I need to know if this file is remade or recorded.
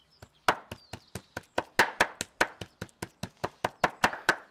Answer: recorded